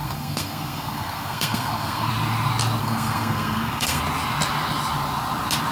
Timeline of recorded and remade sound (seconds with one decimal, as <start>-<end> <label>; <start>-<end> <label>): 0.0-2.1 remade; 2.1-2.8 recorded; 2.8-4.0 remade; 4.0-5.7 recorded